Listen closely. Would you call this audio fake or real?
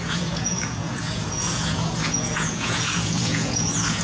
fake